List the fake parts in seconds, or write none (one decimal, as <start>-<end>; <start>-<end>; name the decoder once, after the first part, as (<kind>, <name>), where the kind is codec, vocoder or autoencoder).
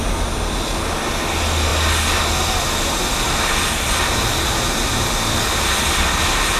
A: none